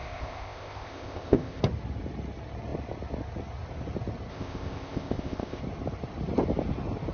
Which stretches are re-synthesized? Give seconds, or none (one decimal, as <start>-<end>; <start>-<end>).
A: 0.0-1.6; 4.3-5.6